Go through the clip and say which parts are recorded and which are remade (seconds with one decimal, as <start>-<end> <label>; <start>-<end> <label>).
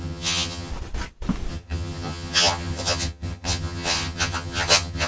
0.0-0.7 remade; 0.7-1.5 recorded; 1.5-5.1 remade